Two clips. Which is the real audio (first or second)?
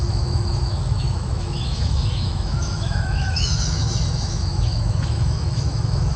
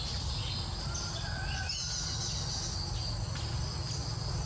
second